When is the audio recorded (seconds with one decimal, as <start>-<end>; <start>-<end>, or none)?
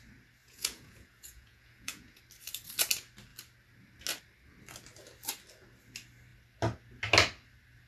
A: 0.0-0.4; 2.2-7.9